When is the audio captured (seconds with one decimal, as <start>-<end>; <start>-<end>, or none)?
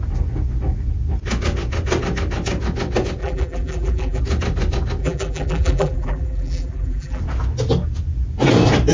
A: 0.0-3.2; 4.2-5.0; 7.2-8.9